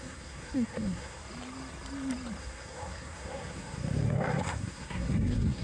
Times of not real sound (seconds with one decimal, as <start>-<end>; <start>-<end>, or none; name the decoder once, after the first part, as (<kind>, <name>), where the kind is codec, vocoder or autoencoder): 0.0-1.2 (codec, SNAC); 2.4-5.6